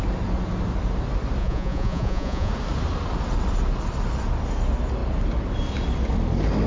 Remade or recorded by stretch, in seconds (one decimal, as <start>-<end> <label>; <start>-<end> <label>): 0.0-1.4 recorded; 1.4-2.5 remade; 2.5-6.7 recorded